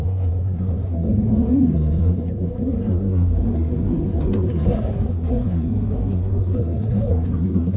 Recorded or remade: remade